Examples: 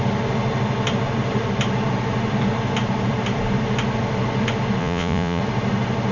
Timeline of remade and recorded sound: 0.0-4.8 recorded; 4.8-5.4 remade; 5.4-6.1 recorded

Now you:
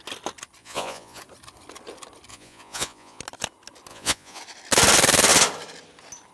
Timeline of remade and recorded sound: 0.0-0.6 recorded; 0.6-1.2 remade; 1.2-2.3 recorded; 2.3-3.2 remade; 3.2-3.9 recorded; 3.9-4.4 remade; 4.4-6.3 recorded

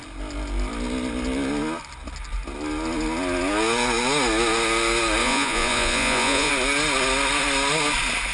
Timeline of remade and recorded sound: 0.0-5.2 recorded; 5.2-6.5 remade; 6.5-8.3 recorded

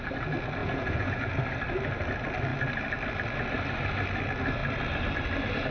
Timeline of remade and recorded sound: 0.0-0.6 recorded; 0.6-1.4 remade; 1.4-5.7 recorded

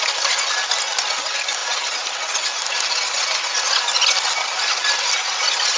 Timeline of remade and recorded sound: 0.0-5.8 recorded

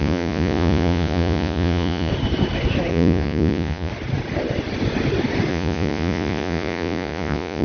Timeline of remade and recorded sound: 0.0-2.1 remade; 2.1-2.9 recorded; 2.9-3.9 remade; 3.9-5.5 recorded; 5.5-7.6 remade